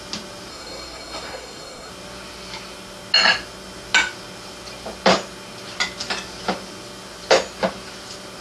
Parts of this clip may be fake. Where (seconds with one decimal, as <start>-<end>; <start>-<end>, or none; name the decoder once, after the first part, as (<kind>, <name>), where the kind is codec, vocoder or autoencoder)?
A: 0.5-1.9 (codec, SNAC)